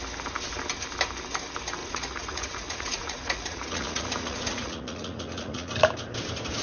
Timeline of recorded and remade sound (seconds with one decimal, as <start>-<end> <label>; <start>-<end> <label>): 0.0-1.8 recorded; 1.8-5.7 remade; 5.7-6.6 recorded